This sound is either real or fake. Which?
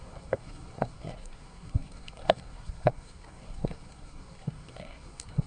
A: fake